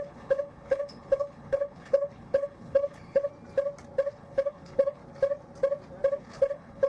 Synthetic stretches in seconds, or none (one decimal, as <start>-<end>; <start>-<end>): 0.0-3.3; 4.1-5.0; 6.2-6.9